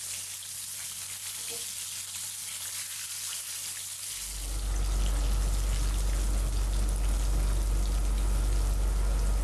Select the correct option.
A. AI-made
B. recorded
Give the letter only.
B